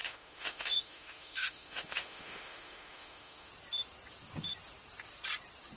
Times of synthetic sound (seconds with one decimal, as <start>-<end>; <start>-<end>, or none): 0.0-3.5